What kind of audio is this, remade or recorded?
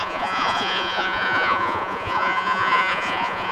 remade